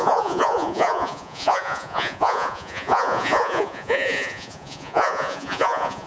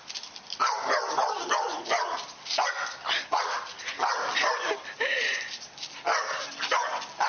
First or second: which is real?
second